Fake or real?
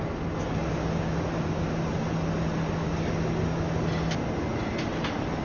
real